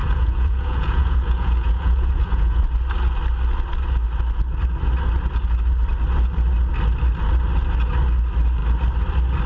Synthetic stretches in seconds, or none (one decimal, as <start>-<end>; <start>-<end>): 0.0-2.6